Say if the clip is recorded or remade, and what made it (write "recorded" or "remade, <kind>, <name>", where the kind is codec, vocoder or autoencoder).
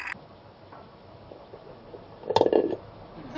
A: recorded